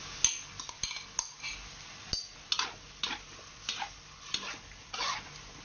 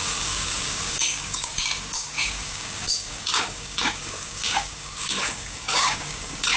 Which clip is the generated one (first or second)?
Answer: second